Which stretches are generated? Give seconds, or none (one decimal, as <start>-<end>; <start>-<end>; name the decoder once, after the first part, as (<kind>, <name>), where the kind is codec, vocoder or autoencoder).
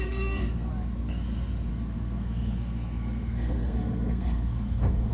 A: 0.0-0.7 (codec, SNAC); 1.7-5.1